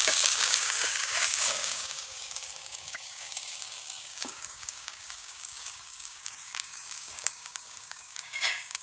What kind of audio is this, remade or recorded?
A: remade